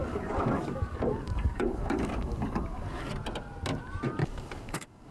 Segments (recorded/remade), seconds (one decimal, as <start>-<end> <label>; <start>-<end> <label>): 0.0-3.1 remade; 3.1-4.2 recorded; 4.2-5.1 remade